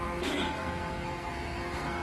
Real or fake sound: fake